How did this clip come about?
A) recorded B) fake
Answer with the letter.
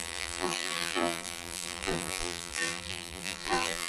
B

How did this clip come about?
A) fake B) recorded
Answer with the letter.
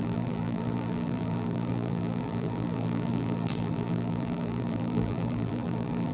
A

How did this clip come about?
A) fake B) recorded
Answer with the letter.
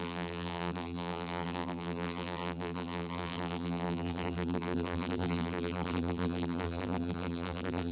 A